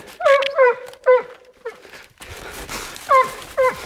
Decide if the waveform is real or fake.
real